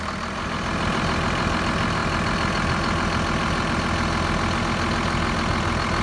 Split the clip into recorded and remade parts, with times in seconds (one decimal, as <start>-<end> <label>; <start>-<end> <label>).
0.0-6.0 recorded